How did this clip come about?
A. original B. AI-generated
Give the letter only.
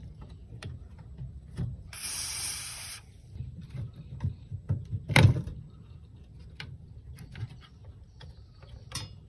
B